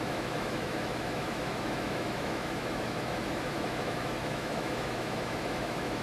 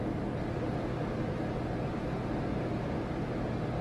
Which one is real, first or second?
second